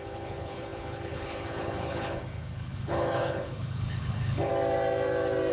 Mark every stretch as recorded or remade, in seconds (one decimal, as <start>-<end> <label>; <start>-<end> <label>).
0.0-4.5 remade; 4.5-5.5 recorded